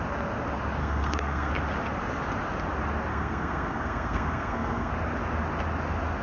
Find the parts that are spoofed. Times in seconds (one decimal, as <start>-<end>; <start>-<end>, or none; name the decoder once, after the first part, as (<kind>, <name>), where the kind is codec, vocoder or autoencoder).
0.8-1.5 (codec, SNAC); 3.1-4.9